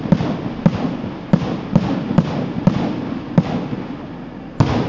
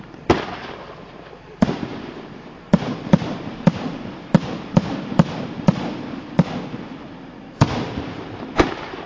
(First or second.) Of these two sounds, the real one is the first